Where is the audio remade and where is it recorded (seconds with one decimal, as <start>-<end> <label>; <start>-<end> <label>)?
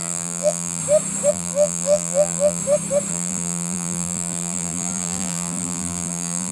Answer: 0.0-0.8 remade; 0.8-1.3 recorded; 1.3-2.6 remade; 2.6-3.1 recorded; 3.1-6.5 remade